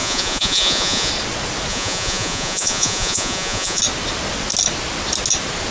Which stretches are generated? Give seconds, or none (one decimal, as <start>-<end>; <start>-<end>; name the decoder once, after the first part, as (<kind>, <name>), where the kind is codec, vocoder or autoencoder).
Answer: 0.0-1.1 (vocoder, Vocos); 1.7-3.8